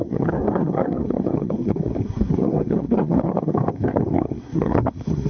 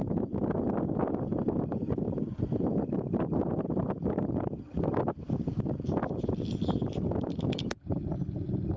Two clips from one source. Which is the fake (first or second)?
first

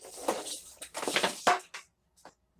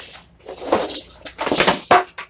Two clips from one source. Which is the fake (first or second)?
first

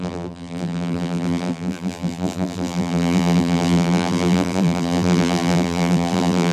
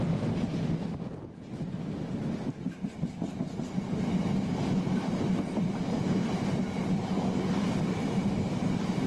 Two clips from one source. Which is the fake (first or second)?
first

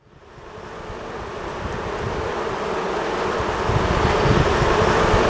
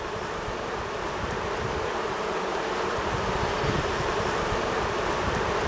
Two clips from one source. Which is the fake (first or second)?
second